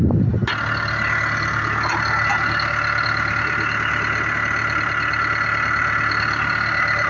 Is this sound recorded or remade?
recorded